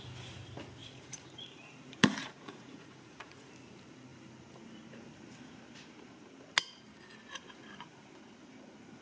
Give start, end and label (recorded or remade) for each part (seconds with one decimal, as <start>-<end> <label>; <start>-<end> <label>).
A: 0.0-0.8 recorded; 0.8-1.5 remade; 1.5-2.0 recorded; 2.0-3.5 remade; 3.5-9.0 recorded